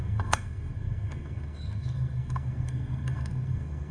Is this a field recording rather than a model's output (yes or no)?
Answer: no